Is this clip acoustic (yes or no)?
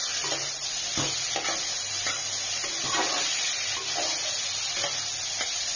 yes